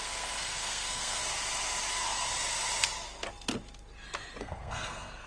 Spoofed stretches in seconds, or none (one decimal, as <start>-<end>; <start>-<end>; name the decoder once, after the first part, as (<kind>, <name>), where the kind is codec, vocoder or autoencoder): 0.0-1.2 (codec, SNAC); 4.4-5.3